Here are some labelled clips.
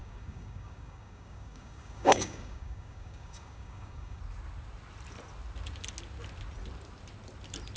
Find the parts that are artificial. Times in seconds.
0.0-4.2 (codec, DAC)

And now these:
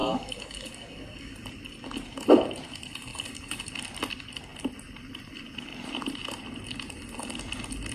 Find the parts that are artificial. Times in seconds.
0.0-1.3 (codec, DAC); 3.1-3.7

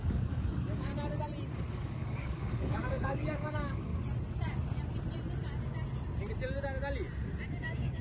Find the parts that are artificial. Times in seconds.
0.0-0.9 (codec, DAC); 1.7-3.9; 7.6-8.0

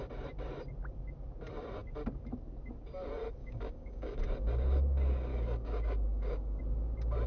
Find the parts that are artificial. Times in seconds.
3.4-4.2 (codec, DAC); 5.3-6.6

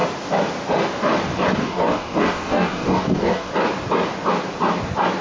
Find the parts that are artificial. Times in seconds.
1.6-3.5 (codec, DAC)

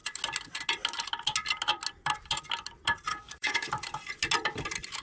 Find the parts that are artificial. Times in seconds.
3.1-3.7 (codec, DAC)